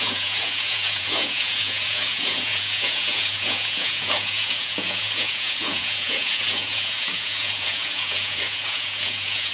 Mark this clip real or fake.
fake